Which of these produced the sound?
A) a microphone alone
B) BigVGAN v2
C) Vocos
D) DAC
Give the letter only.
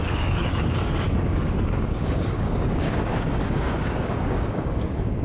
D